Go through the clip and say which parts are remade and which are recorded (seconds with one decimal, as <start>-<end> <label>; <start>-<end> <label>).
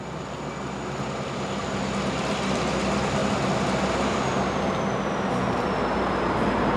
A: 0.0-6.8 recorded